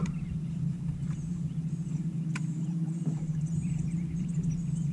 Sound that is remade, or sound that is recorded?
remade